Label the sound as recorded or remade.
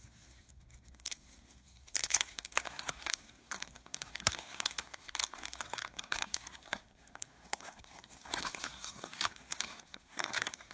remade